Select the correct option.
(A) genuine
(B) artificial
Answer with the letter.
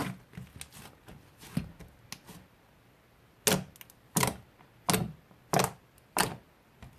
A